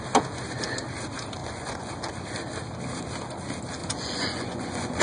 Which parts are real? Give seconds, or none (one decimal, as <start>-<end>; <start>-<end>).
0.0-1.4; 1.9-3.8